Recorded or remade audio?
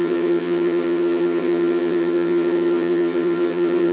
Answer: remade